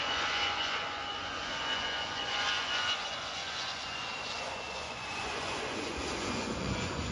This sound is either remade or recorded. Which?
remade